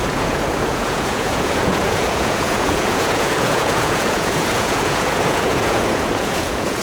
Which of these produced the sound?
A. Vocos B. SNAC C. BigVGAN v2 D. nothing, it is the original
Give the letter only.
A